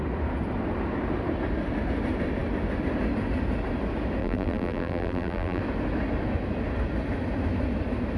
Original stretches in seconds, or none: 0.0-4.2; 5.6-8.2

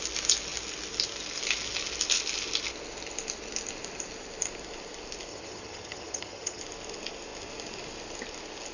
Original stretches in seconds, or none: 0.0-5.3; 6.6-8.7

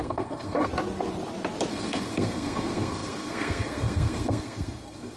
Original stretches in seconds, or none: 0.7-1.7

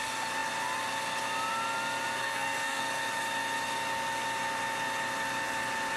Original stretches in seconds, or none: 0.0-2.2; 2.8-6.0

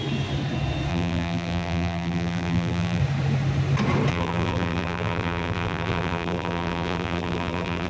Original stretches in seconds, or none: 0.0-0.9; 3.0-4.1

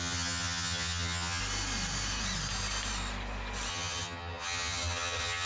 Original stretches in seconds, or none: 1.4-3.7

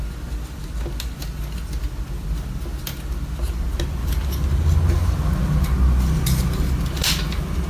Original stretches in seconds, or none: 0.0-7.7